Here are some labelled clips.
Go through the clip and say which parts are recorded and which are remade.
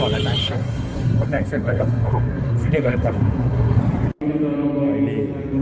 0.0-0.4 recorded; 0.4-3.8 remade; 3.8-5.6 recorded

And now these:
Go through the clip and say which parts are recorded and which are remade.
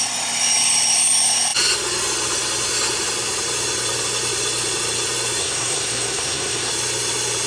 0.0-5.4 recorded; 5.4-6.7 remade; 6.7-7.5 recorded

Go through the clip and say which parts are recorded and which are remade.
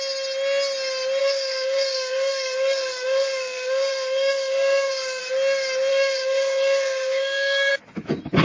0.0-1.2 recorded; 1.2-5.2 remade; 5.2-5.9 recorded; 5.9-7.7 remade; 7.7-8.4 recorded